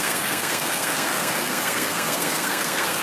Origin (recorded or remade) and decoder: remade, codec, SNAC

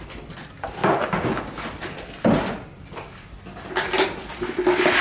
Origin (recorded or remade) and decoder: recorded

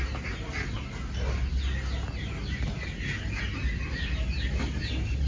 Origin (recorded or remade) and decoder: recorded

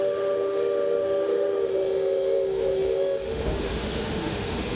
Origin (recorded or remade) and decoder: remade, autoencoder, DAC-VAE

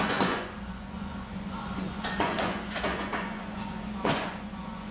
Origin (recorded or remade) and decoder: remade, vocoder, Vocos